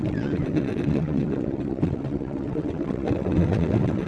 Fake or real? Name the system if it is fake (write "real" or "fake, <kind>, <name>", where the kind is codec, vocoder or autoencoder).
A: fake, vocoder, WaveNeXt